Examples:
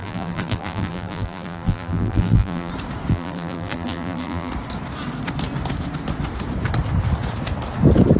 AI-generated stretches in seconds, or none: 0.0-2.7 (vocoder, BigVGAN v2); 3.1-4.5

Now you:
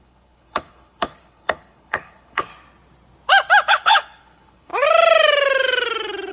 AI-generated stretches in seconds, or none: 0.0-2.5 (codec, HILCodec); 3.7-4.7